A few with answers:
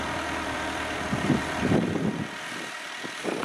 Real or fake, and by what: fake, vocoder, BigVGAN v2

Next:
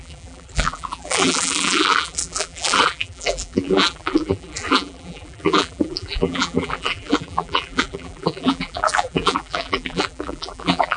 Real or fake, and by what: fake, vocoder, BigVGAN v2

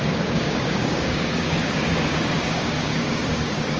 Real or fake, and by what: fake, codec, DAC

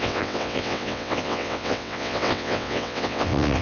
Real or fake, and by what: fake, vocoder, WaveNeXt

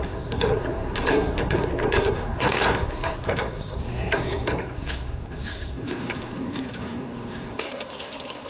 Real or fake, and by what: fake, codec, SNAC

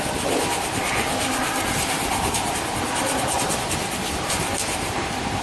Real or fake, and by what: real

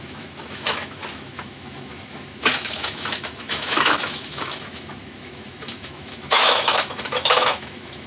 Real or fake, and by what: fake, autoencoder, DAC-VAE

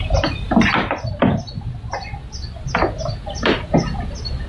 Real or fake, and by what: real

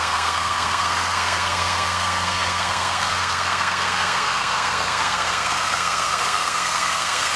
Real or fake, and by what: fake, codec, SNAC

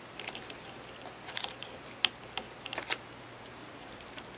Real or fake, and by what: real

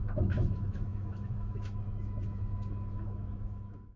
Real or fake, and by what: fake, autoencoder, DAC-VAE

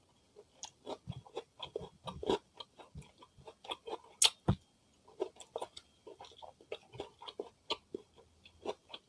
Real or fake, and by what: real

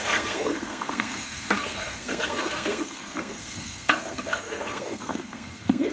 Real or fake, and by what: fake, codec, SNAC